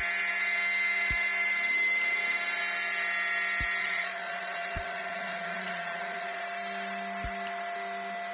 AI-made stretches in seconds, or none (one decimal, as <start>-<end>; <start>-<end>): 3.8-6.4